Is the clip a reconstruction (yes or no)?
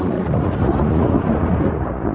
yes